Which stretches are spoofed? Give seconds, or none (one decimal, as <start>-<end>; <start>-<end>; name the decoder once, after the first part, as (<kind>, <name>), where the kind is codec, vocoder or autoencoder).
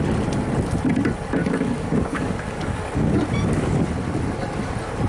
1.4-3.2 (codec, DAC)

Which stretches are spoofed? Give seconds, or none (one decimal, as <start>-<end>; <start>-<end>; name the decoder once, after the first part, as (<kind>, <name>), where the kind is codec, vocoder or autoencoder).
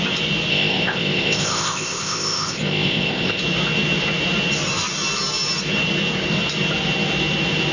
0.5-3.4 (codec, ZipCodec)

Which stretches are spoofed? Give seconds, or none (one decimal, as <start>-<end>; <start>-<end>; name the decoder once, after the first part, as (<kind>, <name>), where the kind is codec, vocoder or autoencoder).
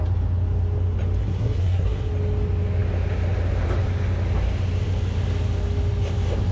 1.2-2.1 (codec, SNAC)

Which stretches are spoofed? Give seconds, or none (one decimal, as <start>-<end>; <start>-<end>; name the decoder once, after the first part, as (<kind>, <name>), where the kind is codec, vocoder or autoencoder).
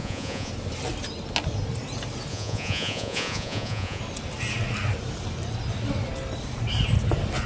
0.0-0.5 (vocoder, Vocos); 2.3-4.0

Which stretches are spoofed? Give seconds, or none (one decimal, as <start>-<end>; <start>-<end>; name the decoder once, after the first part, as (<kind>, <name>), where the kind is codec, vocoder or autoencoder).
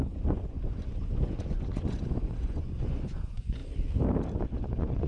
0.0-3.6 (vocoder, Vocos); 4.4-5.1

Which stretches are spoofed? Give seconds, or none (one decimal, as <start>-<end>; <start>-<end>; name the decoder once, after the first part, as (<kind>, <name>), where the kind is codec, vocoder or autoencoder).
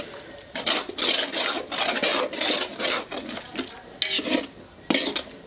none